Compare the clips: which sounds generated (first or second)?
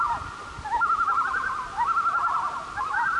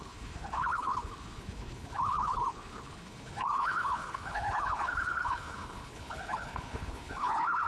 second